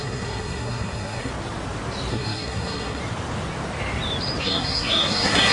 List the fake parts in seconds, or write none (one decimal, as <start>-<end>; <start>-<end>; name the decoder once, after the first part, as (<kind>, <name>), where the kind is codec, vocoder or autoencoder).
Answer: 0.0-1.3 (codec, SNAC); 2.1-3.0; 4.4-5.5